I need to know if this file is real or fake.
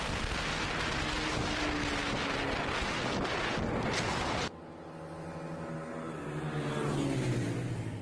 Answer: real